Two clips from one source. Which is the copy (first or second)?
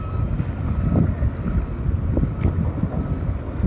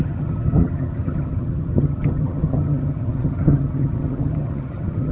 second